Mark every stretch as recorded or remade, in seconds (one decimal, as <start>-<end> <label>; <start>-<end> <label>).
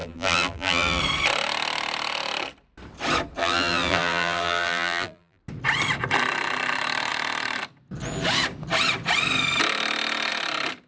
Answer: 0.0-1.0 remade; 1.0-3.4 recorded; 3.4-5.4 remade; 5.4-10.9 recorded